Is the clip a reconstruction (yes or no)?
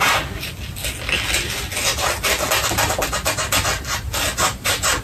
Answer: no